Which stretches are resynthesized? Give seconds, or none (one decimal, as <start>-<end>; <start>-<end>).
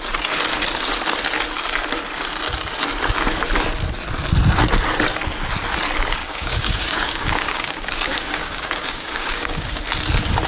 6.2-9.8